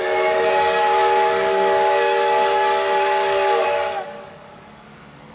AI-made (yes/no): yes